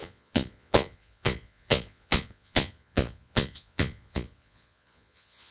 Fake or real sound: fake